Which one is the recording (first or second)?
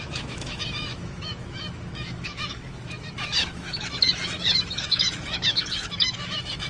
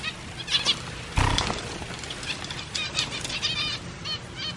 second